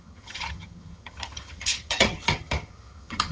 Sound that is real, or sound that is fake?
fake